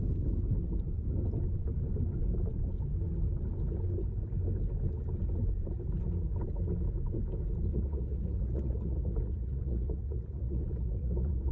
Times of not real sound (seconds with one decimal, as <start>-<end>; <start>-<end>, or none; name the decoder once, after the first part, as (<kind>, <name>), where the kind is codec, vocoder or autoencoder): 7.7-11.5 (vocoder, Vocos)